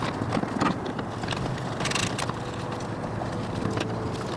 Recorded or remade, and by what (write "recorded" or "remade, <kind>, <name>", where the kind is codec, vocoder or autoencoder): recorded